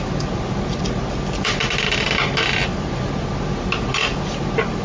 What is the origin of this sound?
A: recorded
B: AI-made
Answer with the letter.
A